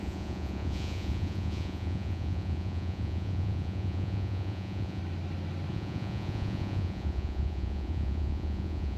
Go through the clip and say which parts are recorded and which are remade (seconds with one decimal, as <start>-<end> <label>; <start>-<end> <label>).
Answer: 0.0-5.0 remade; 5.0-5.7 recorded; 5.7-9.0 remade